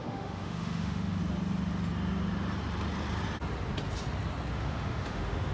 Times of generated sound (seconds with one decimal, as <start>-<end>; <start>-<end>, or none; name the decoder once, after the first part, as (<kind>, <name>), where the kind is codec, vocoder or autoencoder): 0.0-1.2 (autoencoder, DAC-VAE); 4.5-5.5